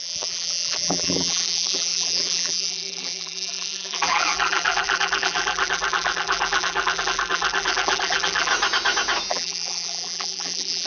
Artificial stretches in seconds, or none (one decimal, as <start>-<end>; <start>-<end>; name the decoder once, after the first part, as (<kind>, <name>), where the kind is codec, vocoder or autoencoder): 0.0-8.5 (vocoder, BigVGAN v2); 9.3-10.9